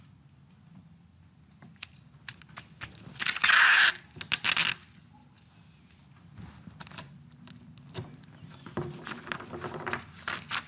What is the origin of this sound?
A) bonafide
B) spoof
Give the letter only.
A